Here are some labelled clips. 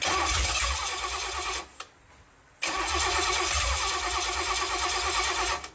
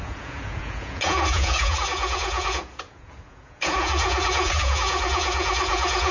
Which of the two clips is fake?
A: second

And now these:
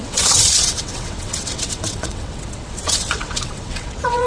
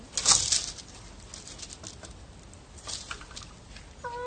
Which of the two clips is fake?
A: first